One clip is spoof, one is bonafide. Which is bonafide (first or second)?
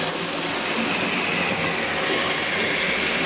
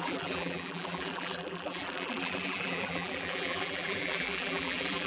first